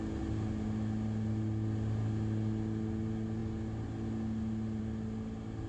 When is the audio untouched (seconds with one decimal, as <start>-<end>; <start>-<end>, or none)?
0.0-5.7